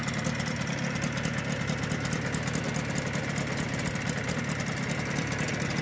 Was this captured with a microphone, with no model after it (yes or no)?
yes